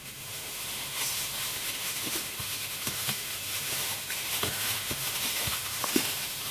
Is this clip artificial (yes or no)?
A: yes